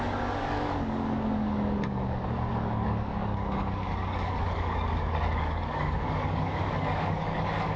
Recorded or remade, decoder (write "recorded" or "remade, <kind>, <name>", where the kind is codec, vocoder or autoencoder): remade, codec, DAC